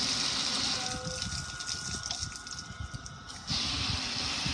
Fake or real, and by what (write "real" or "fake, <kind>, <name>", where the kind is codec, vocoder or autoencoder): real